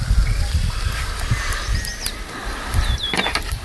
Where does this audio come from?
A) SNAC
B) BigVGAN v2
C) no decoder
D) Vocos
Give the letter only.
C